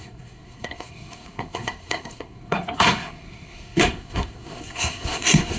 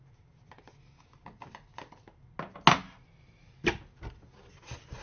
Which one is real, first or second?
second